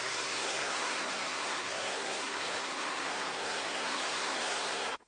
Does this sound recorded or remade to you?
remade